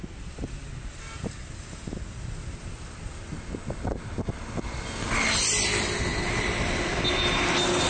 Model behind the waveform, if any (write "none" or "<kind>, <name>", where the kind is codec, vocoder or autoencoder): none